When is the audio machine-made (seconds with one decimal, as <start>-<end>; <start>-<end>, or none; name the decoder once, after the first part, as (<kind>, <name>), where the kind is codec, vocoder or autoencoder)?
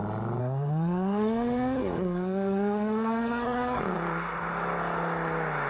0.4-3.8 (codec, SNAC)